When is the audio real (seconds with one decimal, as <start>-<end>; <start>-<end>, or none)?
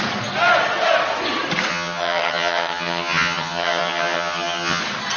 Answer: 0.0-1.7; 4.8-5.2